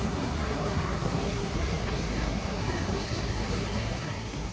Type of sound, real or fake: fake